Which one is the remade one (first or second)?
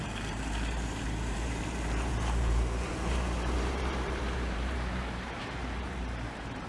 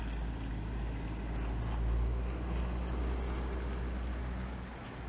first